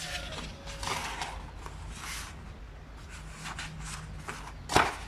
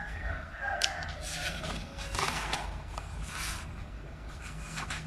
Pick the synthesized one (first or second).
second